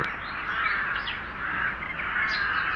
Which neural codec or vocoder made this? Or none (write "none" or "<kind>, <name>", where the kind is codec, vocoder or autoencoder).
none